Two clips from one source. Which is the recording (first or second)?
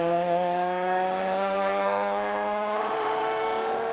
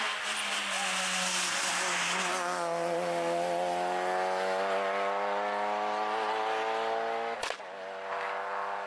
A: second